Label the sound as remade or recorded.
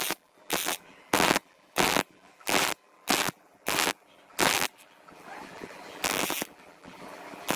remade